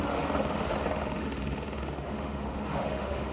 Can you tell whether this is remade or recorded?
remade